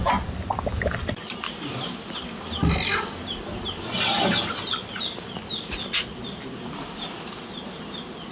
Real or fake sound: real